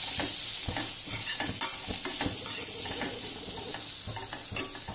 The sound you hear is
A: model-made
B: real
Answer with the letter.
B